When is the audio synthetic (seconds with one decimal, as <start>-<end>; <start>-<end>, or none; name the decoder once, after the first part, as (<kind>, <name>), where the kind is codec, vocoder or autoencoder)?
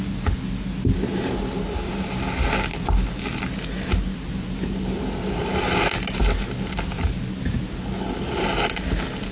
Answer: none